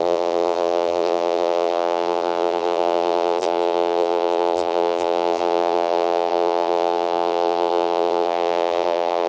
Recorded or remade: remade